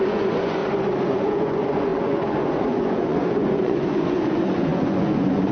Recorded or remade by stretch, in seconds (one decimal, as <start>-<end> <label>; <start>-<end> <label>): 0.0-0.6 remade; 0.6-1.1 recorded; 1.1-5.5 remade